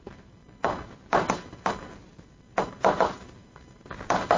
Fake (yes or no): yes